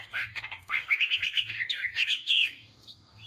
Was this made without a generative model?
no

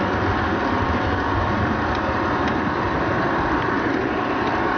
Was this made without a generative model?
yes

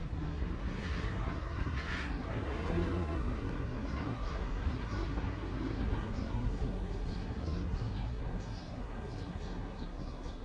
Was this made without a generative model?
no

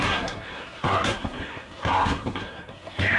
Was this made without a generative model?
no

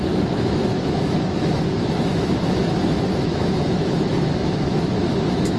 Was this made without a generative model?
no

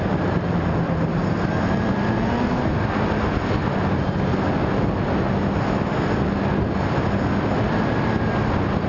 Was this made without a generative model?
yes